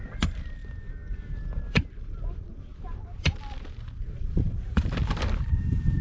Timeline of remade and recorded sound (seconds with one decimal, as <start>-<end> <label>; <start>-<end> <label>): 0.0-0.6 remade; 0.6-2.0 recorded; 2.0-2.7 remade; 2.7-4.2 recorded; 4.2-6.0 remade